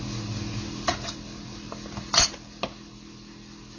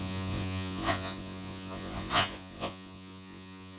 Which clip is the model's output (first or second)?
second